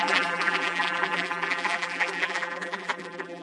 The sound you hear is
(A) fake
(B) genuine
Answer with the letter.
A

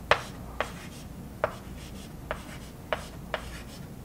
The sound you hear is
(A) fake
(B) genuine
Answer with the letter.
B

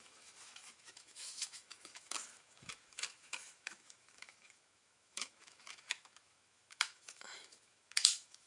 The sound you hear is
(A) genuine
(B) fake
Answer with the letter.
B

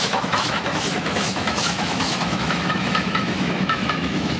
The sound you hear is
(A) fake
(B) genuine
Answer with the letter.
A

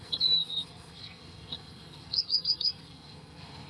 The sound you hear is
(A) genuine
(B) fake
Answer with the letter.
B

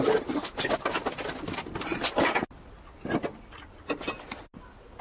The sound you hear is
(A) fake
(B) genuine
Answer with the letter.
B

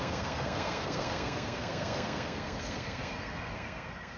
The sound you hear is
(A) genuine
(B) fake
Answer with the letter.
B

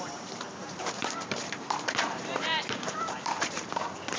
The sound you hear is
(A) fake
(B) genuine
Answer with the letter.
A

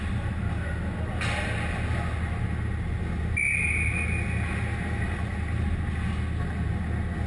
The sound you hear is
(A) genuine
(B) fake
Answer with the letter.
A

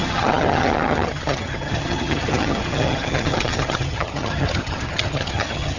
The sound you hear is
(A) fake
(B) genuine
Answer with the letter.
A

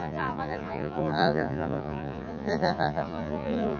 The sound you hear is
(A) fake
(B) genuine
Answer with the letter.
A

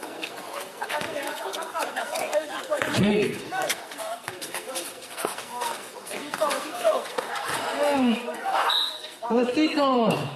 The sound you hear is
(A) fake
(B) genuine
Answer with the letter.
A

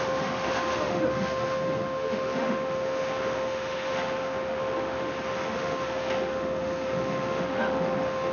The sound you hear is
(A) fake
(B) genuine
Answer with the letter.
A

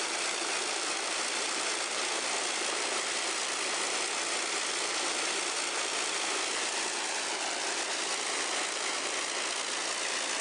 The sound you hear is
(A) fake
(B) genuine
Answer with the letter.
B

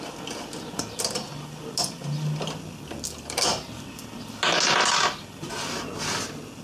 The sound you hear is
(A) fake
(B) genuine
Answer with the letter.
B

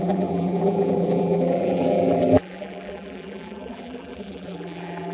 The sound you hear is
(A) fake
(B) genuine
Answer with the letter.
A